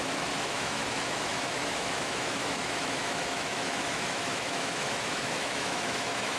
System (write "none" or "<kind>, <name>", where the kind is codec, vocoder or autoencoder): autoencoder, DAC-VAE